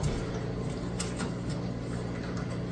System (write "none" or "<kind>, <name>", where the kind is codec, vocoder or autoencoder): none